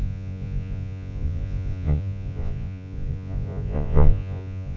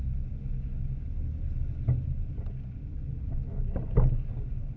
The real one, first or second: second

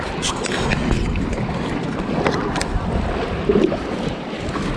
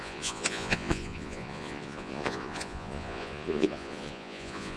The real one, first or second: first